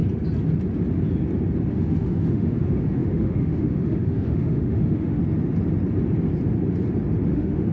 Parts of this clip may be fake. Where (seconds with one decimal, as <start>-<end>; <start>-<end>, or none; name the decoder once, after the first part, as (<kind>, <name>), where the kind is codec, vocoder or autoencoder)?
1.7-5.2 (autoencoder, DAC-VAE); 7.3-7.7